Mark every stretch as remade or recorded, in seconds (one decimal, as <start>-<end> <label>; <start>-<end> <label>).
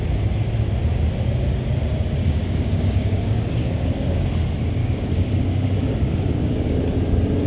0.0-2.2 recorded; 2.2-4.2 remade; 4.2-4.8 recorded; 4.8-6.8 remade; 6.8-7.5 recorded